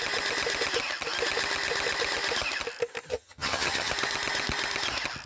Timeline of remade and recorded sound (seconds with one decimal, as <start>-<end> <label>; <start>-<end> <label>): 0.0-3.1 recorded; 3.1-3.9 remade; 3.9-5.3 recorded

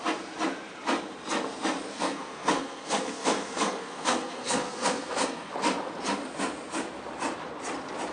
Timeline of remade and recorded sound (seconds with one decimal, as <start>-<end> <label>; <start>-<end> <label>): 0.0-1.9 recorded; 1.9-5.5 remade; 5.5-8.1 recorded

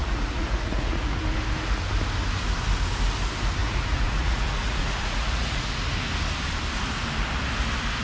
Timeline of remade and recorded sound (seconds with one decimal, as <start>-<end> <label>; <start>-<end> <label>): 0.0-1.2 remade; 1.2-3.6 recorded; 3.6-5.7 remade; 5.7-8.0 recorded

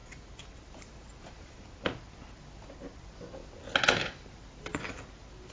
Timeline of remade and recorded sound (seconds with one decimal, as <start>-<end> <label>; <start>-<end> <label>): 0.0-1.6 remade; 1.6-5.5 recorded

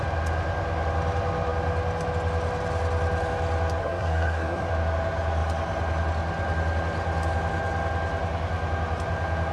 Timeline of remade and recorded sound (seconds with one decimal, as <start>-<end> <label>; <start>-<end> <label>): 0.0-3.8 recorded; 3.8-4.7 remade; 4.7-9.5 recorded

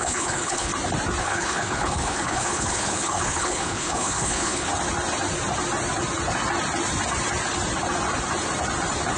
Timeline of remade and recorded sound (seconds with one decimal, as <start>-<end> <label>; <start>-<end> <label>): 0.0-0.7 remade; 0.7-1.2 recorded; 1.2-4.7 remade; 4.7-9.2 recorded

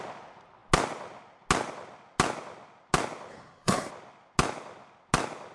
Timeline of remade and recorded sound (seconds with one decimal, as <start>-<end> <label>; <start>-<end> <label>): 0.0-3.3 recorded; 3.3-3.9 remade; 3.9-5.5 recorded